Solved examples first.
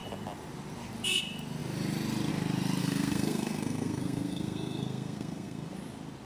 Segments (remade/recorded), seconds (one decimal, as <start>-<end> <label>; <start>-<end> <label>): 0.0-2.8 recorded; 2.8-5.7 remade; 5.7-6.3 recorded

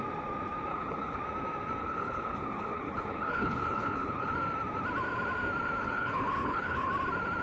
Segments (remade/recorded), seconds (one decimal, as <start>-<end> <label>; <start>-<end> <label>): 0.0-0.7 recorded; 0.7-1.2 remade; 1.2-1.8 recorded; 1.8-4.3 remade; 4.3-5.8 recorded; 5.8-6.9 remade; 6.9-7.4 recorded

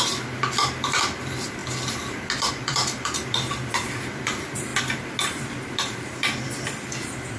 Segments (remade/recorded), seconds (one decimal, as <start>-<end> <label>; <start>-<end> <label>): 0.0-1.6 remade; 1.6-2.5 recorded; 2.5-4.7 remade; 4.7-5.2 recorded; 5.2-7.4 remade

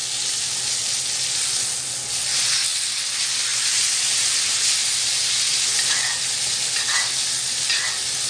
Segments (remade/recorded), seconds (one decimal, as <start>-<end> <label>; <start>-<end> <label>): 0.0-8.3 recorded

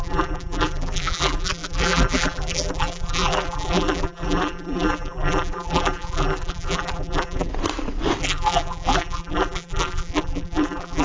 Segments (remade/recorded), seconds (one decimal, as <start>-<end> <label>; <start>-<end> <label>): 0.0-7.5 remade; 7.5-8.2 recorded; 8.2-11.0 remade

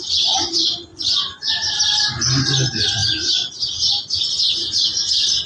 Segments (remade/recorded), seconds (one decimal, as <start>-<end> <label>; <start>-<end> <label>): 0.0-0.9 recorded; 0.9-1.5 remade; 1.5-5.5 recorded

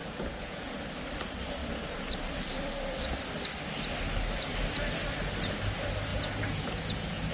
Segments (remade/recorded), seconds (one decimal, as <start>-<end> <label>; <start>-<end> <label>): 0.0-0.7 remade; 0.7-6.1 recorded; 6.1-7.3 remade

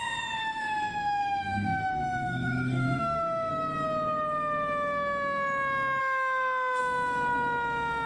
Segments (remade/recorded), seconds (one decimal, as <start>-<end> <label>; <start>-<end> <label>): 0.0-0.4 recorded; 0.4-3.5 remade; 3.5-6.0 recorded; 6.0-6.8 remade; 6.8-8.1 recorded